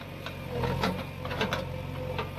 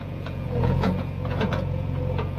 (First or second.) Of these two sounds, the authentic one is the first